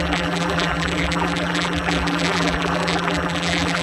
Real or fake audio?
fake